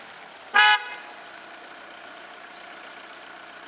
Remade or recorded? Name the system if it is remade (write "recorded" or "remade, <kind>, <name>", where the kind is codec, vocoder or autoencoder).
recorded